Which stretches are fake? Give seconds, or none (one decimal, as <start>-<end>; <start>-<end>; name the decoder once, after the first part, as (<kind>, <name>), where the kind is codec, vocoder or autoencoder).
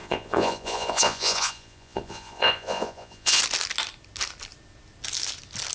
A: 0.0-3.4 (vocoder, Vocos)